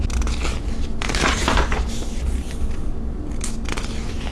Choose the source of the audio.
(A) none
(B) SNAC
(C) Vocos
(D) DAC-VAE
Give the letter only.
A